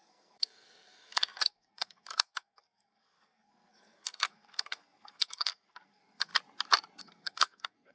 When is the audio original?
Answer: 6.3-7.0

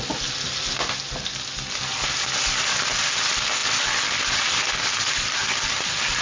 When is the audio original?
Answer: 0.0-6.2

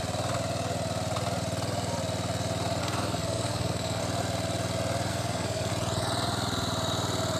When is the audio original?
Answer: 0.0-2.8; 4.0-5.1; 5.7-7.4

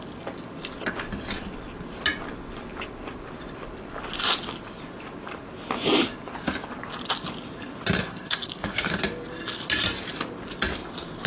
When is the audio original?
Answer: 0.0-8.0; 8.9-11.3

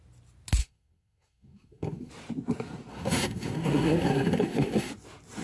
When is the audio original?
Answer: 0.0-0.6; 2.1-2.9; 4.9-5.4